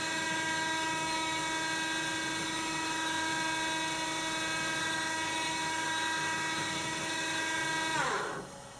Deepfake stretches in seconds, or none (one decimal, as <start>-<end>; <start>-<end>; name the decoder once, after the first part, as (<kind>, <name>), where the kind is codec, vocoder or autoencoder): 0.0-1.4 (autoencoder, DAC-VAE); 2.4-3.3; 4.8-7.6; 8.2-8.8